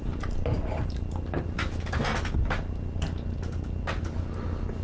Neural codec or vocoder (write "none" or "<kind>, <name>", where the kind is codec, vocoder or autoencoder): none